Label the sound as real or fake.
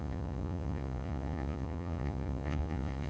fake